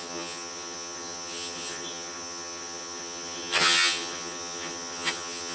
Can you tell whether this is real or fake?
fake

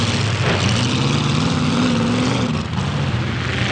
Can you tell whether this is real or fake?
real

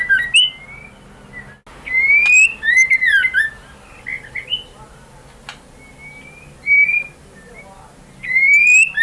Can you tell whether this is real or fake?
real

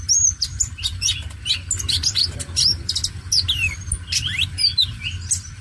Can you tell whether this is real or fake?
real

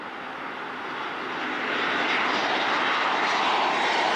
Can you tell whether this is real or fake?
real